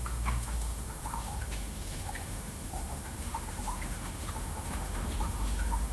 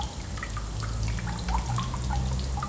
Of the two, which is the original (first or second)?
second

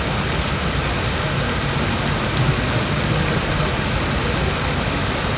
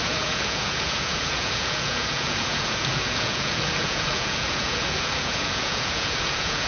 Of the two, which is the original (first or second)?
first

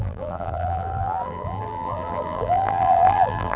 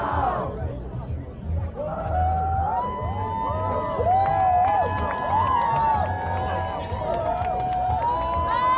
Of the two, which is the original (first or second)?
second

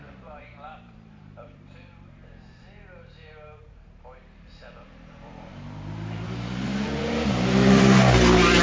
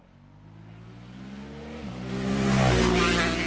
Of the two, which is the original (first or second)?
second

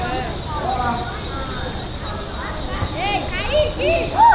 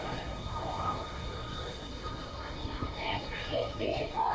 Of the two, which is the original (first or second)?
first